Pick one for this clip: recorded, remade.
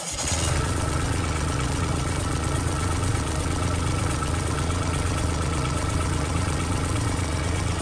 remade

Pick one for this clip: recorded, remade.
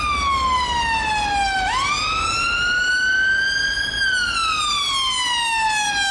recorded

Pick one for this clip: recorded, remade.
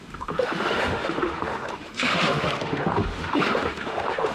remade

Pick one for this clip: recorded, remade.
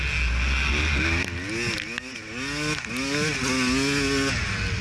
recorded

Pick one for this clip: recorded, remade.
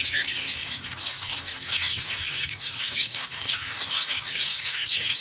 remade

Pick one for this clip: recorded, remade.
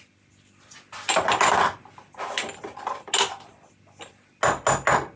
recorded